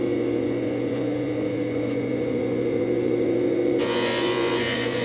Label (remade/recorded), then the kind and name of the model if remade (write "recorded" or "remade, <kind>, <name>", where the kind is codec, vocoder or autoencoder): remade, vocoder, Vocos